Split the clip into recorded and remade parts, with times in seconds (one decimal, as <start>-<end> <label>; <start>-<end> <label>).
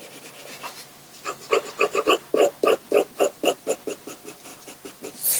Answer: 0.0-5.4 recorded